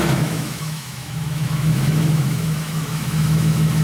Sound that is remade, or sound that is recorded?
remade